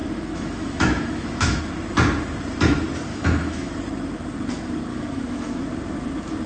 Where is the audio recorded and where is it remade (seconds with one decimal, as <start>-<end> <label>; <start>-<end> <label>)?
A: 0.0-1.6 remade; 1.6-3.1 recorded; 3.1-3.7 remade; 3.7-4.9 recorded; 4.9-5.6 remade; 5.6-6.5 recorded